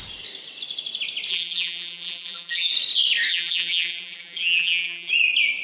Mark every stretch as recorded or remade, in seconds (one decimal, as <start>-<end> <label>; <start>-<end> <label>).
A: 0.0-1.3 recorded; 1.3-2.7 remade; 2.7-3.3 recorded; 3.3-5.1 remade; 5.1-5.6 recorded